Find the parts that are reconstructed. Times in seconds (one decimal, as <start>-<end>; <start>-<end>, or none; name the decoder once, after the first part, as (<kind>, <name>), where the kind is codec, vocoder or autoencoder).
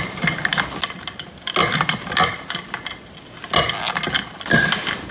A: none